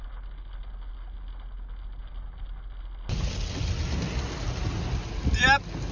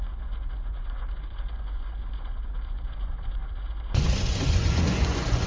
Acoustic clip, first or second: first